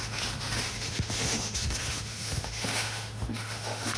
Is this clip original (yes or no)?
no